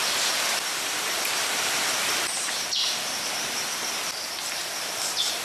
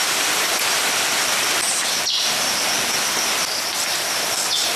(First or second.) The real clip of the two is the second